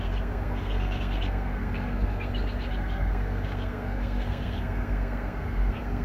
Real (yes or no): no